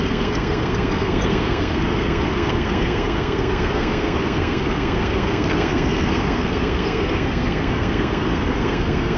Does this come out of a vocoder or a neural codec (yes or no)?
yes